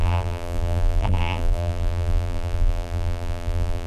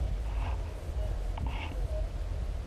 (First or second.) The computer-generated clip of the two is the first